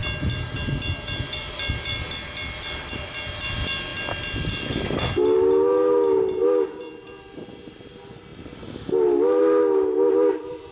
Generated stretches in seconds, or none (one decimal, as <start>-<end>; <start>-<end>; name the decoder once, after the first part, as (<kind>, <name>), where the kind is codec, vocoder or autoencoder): none